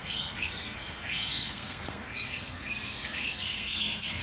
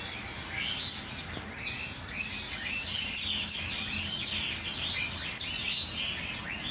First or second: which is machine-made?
first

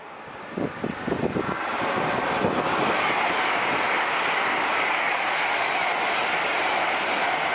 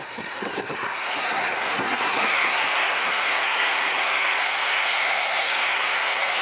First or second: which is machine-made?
second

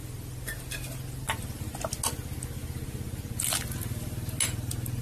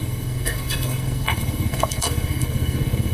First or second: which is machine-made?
second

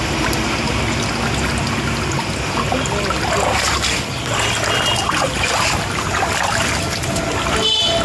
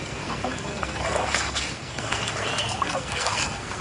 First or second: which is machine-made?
second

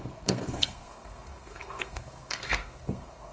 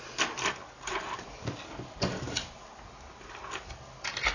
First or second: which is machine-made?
first